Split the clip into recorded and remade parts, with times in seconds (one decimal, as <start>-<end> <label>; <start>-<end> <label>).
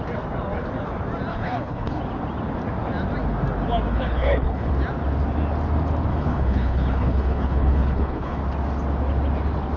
0.0-1.3 recorded; 1.3-2.0 remade; 2.0-3.9 recorded; 3.9-4.7 remade; 4.7-6.1 recorded; 6.1-8.4 remade; 8.4-9.8 recorded